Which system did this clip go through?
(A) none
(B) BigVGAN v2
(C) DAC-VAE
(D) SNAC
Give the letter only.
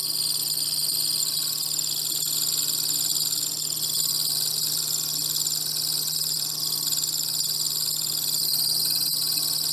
A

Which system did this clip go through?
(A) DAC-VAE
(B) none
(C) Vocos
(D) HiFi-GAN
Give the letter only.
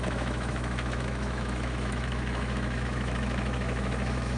A